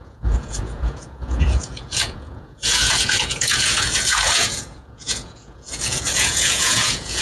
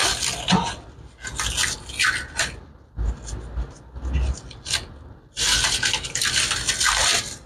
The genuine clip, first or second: second